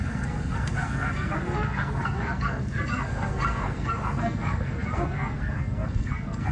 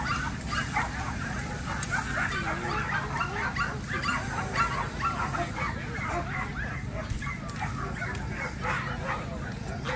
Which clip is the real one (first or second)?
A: second